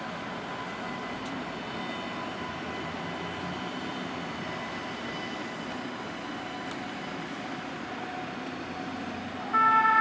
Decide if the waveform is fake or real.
real